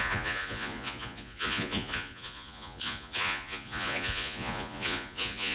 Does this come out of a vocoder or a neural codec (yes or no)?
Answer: yes